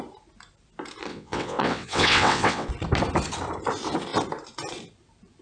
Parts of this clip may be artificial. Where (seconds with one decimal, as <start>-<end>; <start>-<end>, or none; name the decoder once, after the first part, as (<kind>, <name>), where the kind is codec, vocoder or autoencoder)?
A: 1.1-2.7 (vocoder, WaveNeXt)